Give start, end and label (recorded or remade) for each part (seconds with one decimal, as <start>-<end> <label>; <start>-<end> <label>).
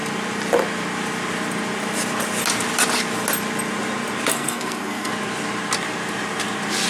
0.0-4.3 recorded; 4.3-5.1 remade; 5.1-6.9 recorded